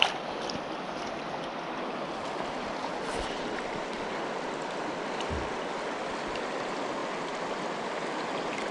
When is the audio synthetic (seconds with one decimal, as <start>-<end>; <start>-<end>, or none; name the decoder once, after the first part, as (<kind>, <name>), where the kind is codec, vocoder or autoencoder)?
none

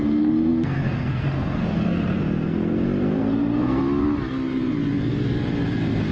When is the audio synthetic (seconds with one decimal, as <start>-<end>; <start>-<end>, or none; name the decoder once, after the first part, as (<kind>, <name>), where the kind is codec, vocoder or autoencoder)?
0.0-3.8 (codec, SNAC)